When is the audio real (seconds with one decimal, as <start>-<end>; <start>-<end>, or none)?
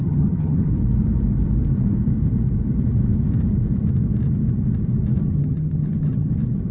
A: 0.7-5.2; 6.3-6.7